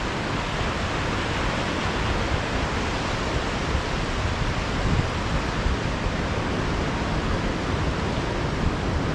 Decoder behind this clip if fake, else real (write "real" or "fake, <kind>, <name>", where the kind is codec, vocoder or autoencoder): real